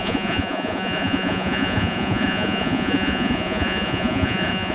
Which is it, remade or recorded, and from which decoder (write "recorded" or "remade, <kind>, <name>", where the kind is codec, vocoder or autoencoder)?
remade, vocoder, Vocos